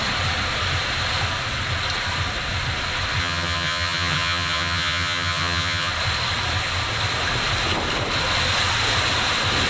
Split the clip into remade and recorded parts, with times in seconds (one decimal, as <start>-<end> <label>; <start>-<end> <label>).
0.0-3.2 recorded; 3.2-5.9 remade; 5.9-9.7 recorded